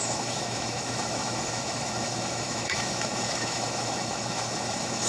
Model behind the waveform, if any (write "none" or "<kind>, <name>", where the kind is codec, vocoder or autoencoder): autoencoder, DAC-VAE